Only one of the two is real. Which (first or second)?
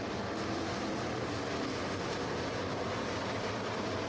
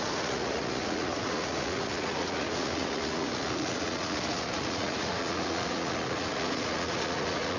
first